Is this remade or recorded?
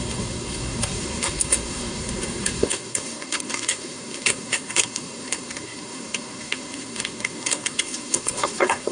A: remade